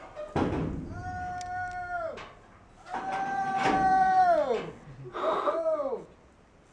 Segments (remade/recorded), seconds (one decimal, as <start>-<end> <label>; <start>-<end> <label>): 0.0-6.7 recorded